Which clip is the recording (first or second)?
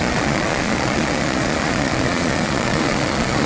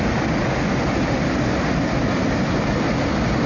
second